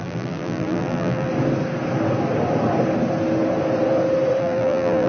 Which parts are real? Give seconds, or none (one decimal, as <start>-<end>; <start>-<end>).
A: 1.3-4.4